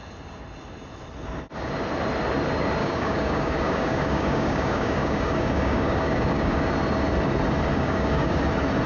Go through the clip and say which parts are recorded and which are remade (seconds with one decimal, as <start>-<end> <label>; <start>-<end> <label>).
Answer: 0.0-2.8 recorded; 2.8-6.7 remade; 6.7-7.7 recorded; 7.7-8.4 remade; 8.4-8.9 recorded